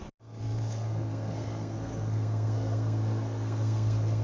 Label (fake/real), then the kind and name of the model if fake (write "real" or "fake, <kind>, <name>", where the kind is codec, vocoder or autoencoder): fake, codec, SNAC